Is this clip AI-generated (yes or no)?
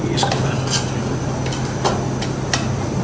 no